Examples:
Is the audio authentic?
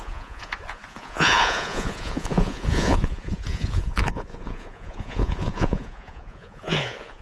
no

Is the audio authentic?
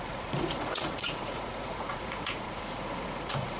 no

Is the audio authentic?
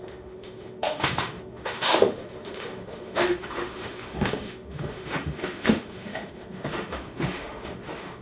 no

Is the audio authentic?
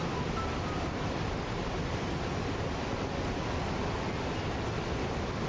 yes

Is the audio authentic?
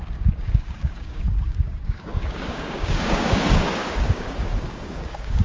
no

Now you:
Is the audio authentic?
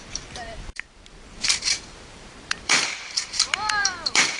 no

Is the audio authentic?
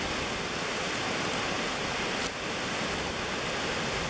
yes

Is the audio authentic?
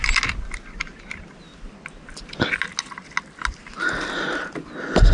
yes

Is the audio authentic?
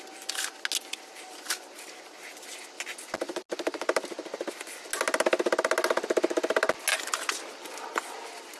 yes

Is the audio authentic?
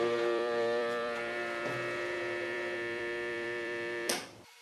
no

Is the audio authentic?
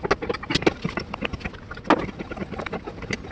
yes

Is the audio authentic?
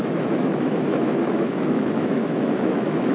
no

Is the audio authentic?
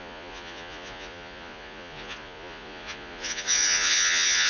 no